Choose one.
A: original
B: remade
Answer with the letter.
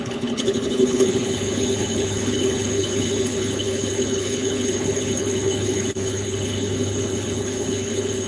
B